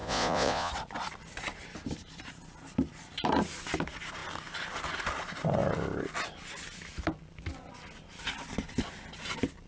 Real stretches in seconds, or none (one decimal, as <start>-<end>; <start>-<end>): 0.7-9.7